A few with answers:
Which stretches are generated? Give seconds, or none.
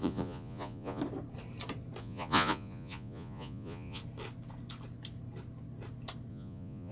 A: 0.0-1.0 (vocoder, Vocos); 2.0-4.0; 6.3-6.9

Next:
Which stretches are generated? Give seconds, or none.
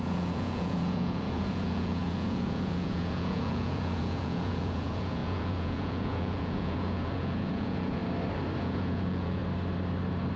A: 0.0-8.0 (vocoder, Vocos); 8.6-9.4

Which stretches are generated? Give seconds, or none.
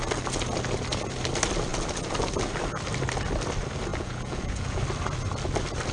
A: 3.9-4.8 (vocoder, Vocos)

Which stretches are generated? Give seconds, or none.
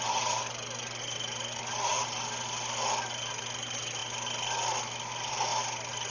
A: none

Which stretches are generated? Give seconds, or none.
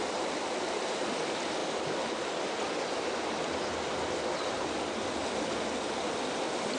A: none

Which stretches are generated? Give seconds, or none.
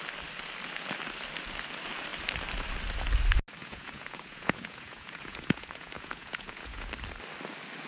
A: 3.6-6.9 (vocoder, Vocos)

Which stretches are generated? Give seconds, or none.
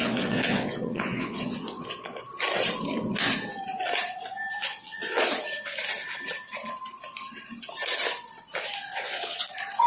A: 0.0-2.2 (vocoder, Vocos); 4.6-5.3; 8.9-9.5